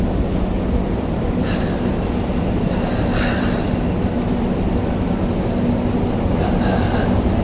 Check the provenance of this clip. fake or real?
real